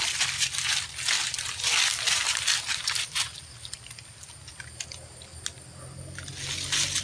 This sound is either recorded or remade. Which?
recorded